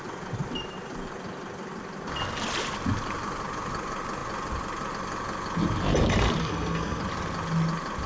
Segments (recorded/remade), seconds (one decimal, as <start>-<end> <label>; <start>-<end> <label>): 0.0-6.4 recorded; 6.4-7.0 remade; 7.0-8.1 recorded